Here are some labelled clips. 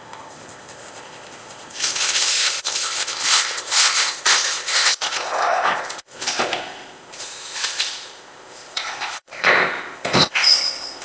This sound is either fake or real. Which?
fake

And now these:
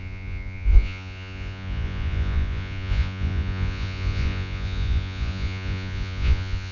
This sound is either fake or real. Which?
fake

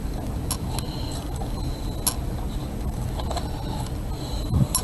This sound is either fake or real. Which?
real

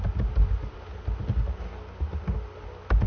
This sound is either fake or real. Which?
real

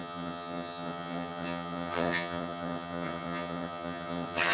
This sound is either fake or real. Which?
fake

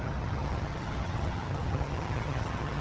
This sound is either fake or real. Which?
fake